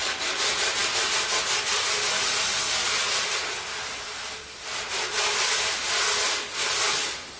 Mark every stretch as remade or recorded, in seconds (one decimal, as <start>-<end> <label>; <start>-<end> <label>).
0.0-7.4 recorded